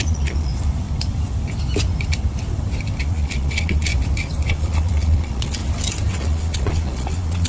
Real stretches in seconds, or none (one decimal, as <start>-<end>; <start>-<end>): 0.5-3.0; 3.9-4.5; 5.6-6.1